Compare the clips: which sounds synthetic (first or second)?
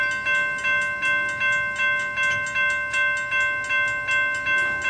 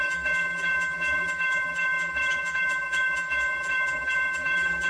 second